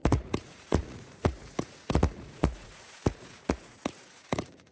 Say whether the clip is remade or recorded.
remade